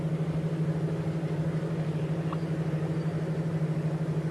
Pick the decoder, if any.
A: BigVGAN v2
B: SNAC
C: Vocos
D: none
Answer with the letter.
D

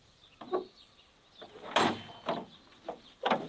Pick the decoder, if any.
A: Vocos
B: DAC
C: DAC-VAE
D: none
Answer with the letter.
D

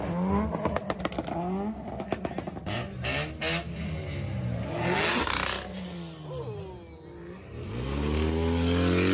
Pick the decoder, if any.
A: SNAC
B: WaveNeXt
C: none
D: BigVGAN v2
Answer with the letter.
C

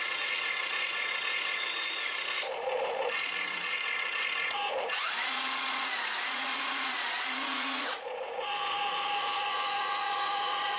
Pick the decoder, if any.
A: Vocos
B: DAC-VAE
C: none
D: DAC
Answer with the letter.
A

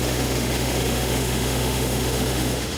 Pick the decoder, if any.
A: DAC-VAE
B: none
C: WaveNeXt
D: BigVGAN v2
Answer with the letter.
A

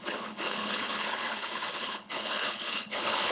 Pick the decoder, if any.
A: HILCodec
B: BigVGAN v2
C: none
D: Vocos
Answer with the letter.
A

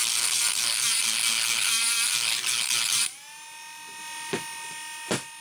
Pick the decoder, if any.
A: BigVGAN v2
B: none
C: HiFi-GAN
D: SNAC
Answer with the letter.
B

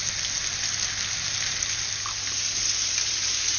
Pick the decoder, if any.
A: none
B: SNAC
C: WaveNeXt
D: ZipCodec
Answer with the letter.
A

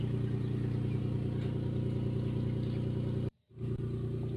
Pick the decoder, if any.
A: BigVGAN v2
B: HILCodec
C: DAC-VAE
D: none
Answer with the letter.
D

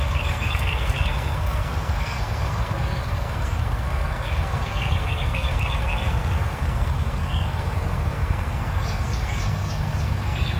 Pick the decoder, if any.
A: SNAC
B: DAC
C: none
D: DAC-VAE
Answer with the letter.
A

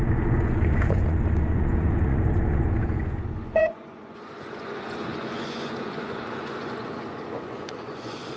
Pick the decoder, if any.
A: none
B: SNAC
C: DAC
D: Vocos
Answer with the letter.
D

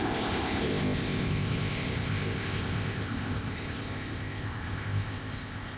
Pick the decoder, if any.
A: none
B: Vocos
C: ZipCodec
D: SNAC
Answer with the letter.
C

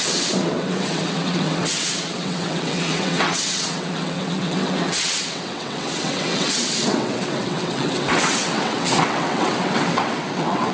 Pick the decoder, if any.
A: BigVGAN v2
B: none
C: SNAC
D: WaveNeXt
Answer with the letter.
D